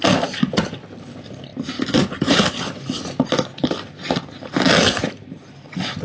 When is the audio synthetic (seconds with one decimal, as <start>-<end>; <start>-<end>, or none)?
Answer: none